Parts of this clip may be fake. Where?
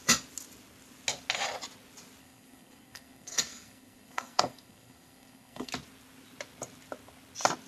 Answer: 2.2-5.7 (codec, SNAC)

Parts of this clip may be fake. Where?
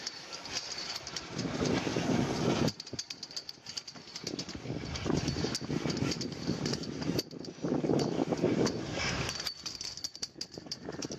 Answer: none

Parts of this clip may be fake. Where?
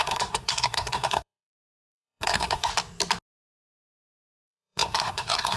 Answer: 0.0-2.7 (codec, SNAC); 3.7-5.6